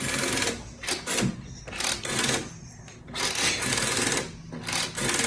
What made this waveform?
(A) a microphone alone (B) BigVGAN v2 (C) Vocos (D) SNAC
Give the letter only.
A